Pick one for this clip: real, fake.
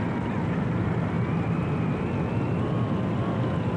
real